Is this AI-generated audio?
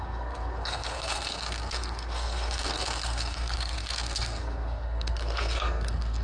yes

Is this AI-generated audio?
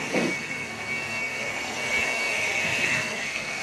yes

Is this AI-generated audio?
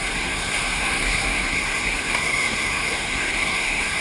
yes